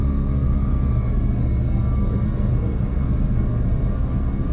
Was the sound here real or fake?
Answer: fake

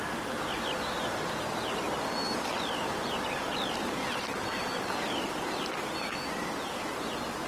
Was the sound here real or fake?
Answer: real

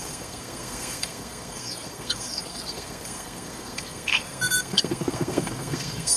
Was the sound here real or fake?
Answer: fake